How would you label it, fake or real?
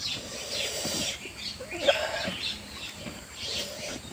fake